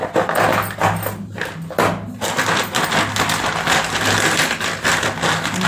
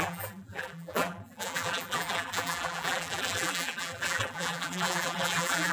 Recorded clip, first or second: first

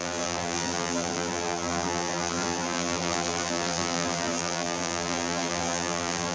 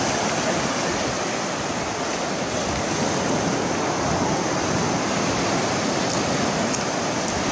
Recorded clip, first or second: second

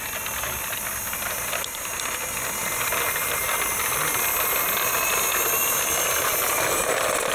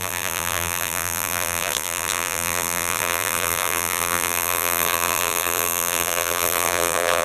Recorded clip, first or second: first